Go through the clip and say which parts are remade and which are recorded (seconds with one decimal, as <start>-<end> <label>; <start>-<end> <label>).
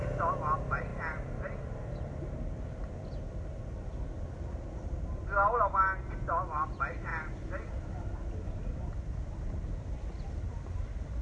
0.0-11.2 recorded